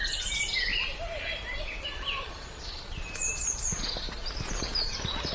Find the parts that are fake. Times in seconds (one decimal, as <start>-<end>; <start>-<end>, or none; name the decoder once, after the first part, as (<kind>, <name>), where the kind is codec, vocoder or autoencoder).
0.7-3.9 (vocoder, BigVGAN v2)